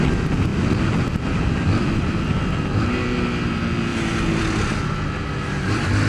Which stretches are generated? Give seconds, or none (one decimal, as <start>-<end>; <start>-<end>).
none